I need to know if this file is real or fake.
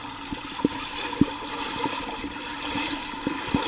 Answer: real